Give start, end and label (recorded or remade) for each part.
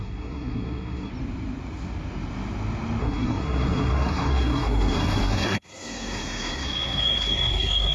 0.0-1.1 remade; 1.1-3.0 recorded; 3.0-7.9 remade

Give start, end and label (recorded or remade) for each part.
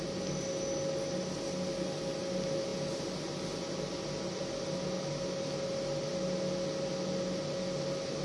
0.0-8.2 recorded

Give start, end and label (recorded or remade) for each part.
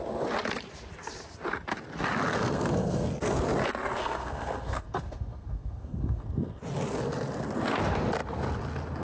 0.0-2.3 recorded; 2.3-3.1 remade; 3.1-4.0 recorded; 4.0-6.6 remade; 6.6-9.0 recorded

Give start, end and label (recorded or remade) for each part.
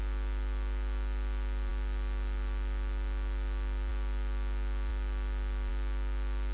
0.0-6.5 recorded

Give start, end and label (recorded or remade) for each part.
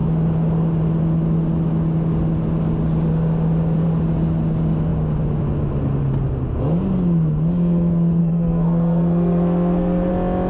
0.0-8.2 recorded; 8.2-10.1 remade; 10.1-10.5 recorded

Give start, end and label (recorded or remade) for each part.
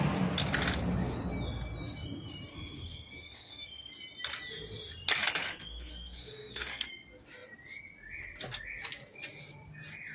0.0-2.5 recorded; 2.5-3.9 remade; 3.9-5.4 recorded; 5.4-6.9 remade; 6.9-10.1 recorded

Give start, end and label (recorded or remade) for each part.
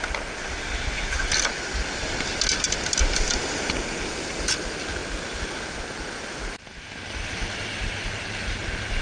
0.0-9.0 recorded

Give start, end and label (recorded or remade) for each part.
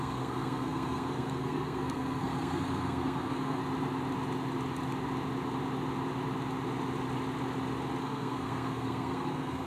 0.0-3.6 remade; 3.6-8.0 recorded; 8.0-9.7 remade